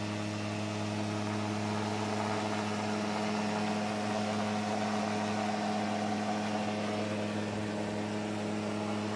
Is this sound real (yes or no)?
yes